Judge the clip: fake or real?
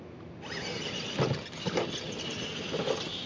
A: real